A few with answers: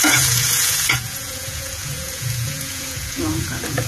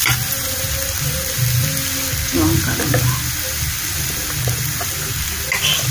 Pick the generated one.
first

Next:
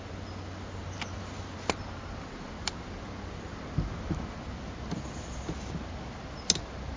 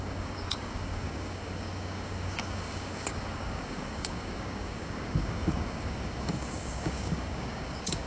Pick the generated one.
second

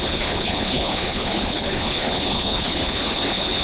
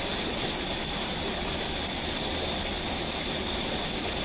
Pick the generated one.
first